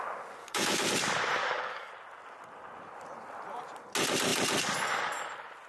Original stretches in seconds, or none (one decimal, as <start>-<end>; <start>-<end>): 0.0-0.4; 0.9-1.4; 1.9-5.7